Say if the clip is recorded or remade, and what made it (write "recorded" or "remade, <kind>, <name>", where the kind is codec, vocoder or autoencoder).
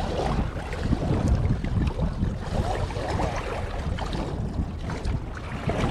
recorded